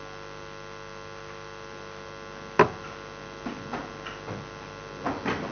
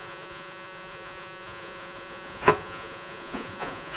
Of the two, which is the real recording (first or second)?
first